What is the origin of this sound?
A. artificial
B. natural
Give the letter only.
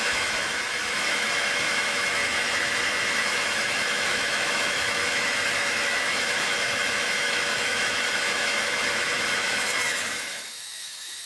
A